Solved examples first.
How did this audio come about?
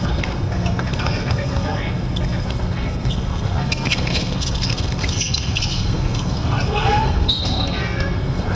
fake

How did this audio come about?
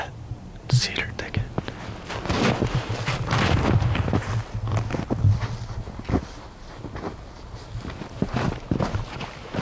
real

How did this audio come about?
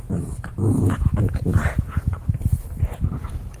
fake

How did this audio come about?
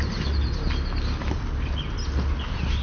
real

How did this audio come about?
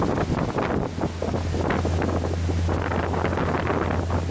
real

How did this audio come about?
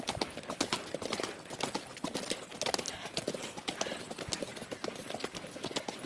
real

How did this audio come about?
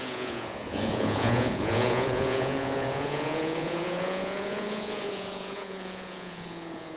fake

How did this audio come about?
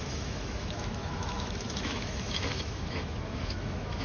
fake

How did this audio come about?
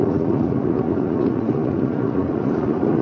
fake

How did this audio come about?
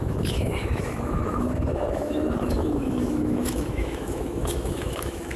fake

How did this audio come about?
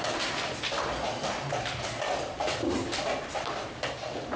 real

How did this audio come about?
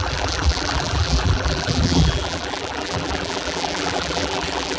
fake